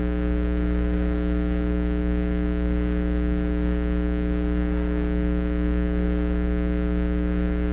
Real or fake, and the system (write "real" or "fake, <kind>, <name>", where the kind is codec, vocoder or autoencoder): fake, codec, DAC